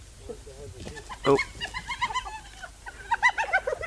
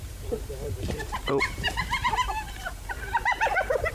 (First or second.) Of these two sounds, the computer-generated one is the second